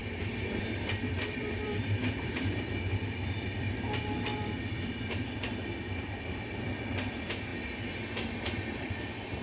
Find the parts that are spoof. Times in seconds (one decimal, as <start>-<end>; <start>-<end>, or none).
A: 0.0-7.5; 8.3-9.4